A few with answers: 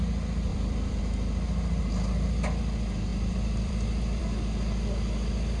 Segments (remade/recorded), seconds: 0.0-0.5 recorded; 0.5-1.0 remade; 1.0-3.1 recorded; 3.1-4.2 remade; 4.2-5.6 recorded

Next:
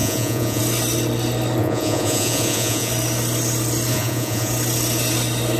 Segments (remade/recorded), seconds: 0.0-0.6 remade; 0.6-1.6 recorded; 1.6-2.9 remade; 2.9-3.9 recorded; 3.9-4.5 remade; 4.5-5.6 recorded

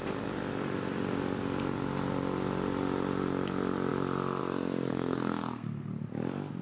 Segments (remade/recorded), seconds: 0.0-4.9 recorded; 4.9-5.9 remade; 5.9-6.6 recorded

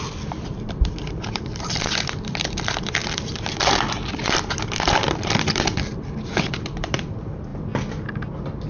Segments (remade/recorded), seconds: 0.0-3.0 remade; 3.0-3.5 recorded; 3.5-8.7 remade

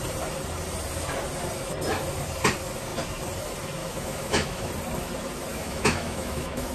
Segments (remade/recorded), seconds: 0.0-3.8 recorded; 3.8-4.7 remade; 4.7-5.5 recorded; 5.5-6.7 remade

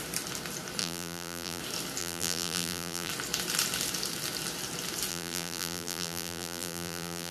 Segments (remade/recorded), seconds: 0.0-0.8 recorded; 0.8-1.6 remade; 1.6-2.0 recorded; 2.0-3.1 remade; 3.1-5.1 recorded; 5.1-7.3 remade

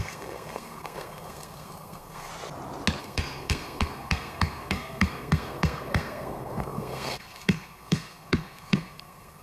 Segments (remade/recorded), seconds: 0.0-2.3 remade; 2.3-3.0 recorded; 3.0-9.4 remade